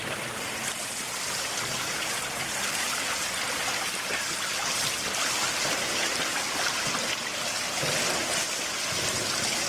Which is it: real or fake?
real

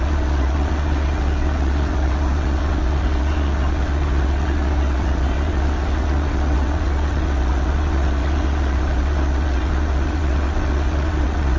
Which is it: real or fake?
fake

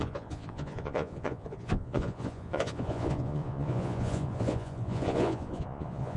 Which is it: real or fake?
fake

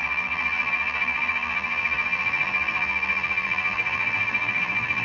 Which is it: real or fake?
fake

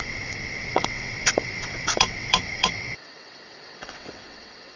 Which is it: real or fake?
fake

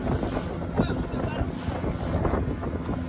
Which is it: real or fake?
real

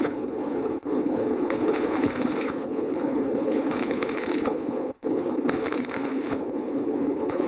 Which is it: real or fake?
fake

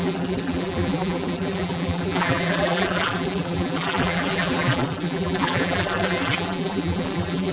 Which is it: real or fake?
fake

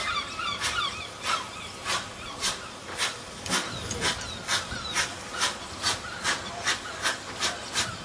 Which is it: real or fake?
fake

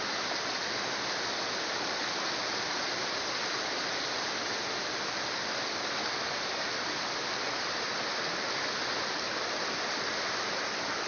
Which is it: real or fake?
real